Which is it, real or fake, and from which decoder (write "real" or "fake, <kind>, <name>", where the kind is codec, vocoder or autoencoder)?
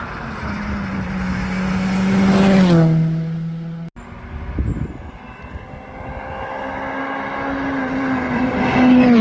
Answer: real